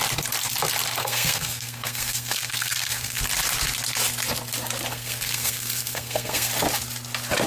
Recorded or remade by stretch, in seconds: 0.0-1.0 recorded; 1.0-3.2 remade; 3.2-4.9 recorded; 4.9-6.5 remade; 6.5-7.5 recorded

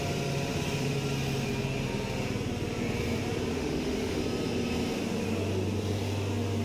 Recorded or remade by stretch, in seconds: 0.0-3.5 recorded; 3.5-4.2 remade; 4.2-6.6 recorded

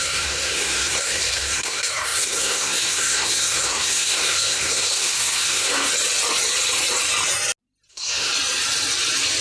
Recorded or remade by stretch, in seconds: 0.0-5.9 remade; 5.9-7.9 recorded; 7.9-8.3 remade; 8.3-9.4 recorded

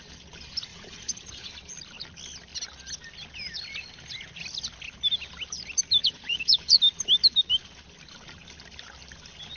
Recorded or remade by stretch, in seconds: 0.0-0.7 recorded; 0.7-1.5 remade; 1.5-6.0 recorded; 6.0-6.8 remade; 6.8-9.6 recorded